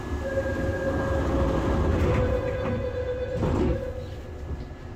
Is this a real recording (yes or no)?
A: yes